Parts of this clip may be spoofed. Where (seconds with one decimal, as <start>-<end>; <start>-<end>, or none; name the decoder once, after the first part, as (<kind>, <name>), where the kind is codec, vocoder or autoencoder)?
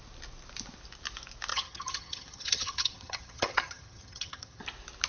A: 1.5-4.6 (vocoder, HiFi-GAN)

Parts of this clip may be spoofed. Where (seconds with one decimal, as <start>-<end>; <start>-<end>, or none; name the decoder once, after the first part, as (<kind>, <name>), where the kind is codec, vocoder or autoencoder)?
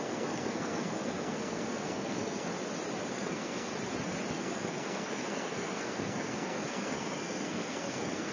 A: 0.0-2.5 (codec, SNAC); 3.1-3.7; 4.3-8.3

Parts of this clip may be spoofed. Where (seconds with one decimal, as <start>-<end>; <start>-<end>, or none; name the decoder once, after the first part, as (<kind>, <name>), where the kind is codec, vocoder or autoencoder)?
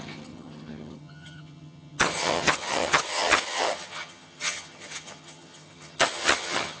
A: 0.0-6.8 (vocoder, HiFi-GAN)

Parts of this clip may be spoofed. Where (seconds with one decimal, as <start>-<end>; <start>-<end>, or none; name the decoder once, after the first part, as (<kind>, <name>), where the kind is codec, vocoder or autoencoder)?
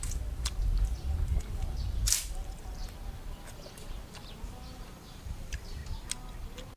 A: 0.0-2.8 (vocoder, BigVGAN v2); 5.0-5.8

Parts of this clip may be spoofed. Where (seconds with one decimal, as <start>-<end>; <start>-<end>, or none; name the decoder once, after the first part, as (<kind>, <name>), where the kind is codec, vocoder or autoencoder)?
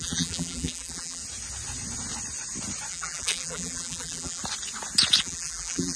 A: 0.0-1.2 (vocoder, BigVGAN v2); 2.9-4.4; 5.2-6.0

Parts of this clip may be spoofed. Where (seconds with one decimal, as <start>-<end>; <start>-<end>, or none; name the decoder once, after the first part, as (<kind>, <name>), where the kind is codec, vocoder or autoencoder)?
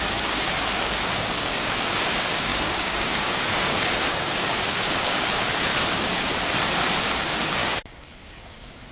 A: 0.0-5.7 (codec, DAC); 7.0-8.9